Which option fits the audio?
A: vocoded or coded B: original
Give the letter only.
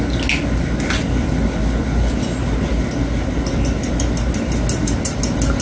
B